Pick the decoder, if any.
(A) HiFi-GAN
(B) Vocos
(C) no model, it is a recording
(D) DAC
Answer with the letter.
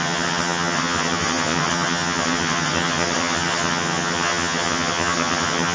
A